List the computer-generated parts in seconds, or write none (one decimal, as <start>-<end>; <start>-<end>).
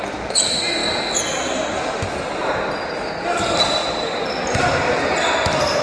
none